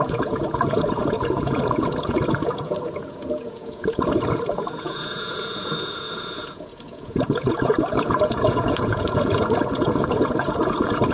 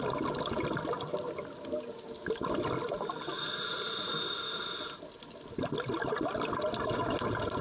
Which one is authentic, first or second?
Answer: second